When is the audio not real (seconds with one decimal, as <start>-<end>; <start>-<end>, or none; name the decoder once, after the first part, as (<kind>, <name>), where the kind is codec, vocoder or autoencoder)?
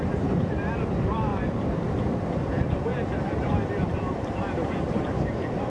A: 1.3-2.2 (vocoder, BigVGAN v2); 2.9-5.7